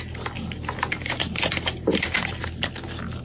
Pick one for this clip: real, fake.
real